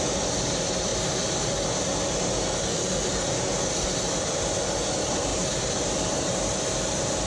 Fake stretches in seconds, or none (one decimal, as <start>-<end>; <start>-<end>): 0.0-0.9; 3.3-7.3

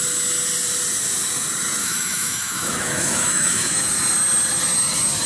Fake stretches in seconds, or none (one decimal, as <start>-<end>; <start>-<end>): 1.8-3.8

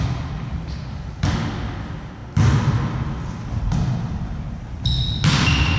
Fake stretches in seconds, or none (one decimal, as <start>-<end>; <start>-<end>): none

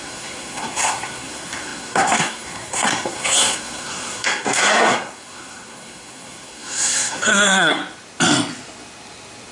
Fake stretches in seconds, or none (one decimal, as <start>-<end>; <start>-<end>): 0.0-7.8

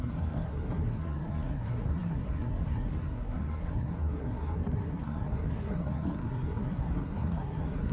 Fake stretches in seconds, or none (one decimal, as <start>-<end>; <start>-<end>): 0.0-7.9

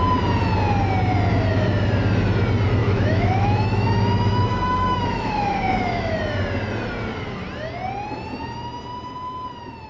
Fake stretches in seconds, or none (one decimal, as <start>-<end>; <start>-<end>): 2.8-6.2

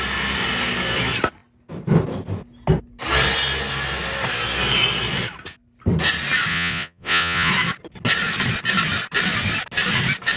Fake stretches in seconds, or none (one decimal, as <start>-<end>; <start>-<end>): 6.5-7.5